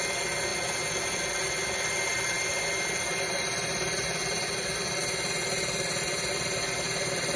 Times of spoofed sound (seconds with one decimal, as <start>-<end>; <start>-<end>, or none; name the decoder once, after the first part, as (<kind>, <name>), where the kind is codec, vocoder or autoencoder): none